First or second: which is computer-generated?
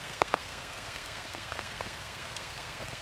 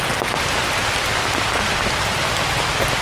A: first